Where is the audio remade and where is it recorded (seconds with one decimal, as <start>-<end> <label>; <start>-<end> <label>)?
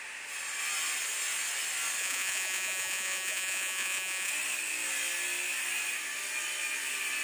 0.0-2.0 recorded; 2.0-4.3 remade; 4.3-7.2 recorded